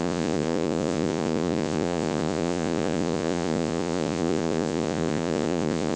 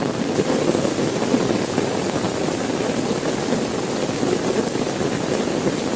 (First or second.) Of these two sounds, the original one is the second